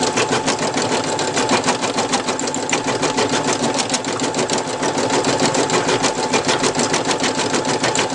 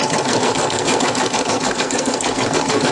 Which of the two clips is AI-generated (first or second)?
second